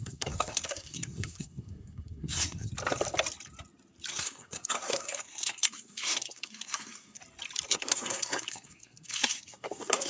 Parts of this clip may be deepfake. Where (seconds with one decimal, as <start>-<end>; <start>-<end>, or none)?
0.0-2.7; 4.1-7.2; 7.7-10.1